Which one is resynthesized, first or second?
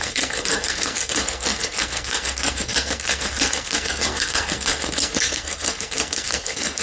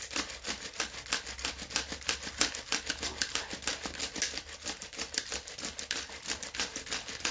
first